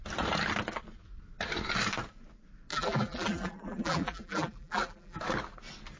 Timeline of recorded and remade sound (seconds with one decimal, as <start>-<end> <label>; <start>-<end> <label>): 0.0-2.7 recorded; 2.7-5.2 remade; 5.2-6.0 recorded